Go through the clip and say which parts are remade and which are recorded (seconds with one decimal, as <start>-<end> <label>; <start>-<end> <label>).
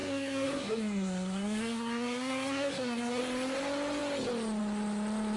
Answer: 0.0-3.2 remade; 3.2-5.4 recorded